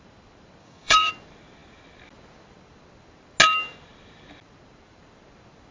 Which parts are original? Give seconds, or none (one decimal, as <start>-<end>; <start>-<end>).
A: 0.0-0.6; 1.1-5.7